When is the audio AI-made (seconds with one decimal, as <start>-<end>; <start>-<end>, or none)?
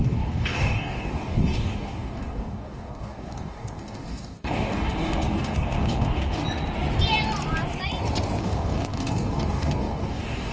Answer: 0.0-6.4; 8.4-10.5